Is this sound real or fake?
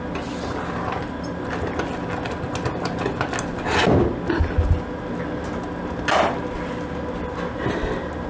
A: real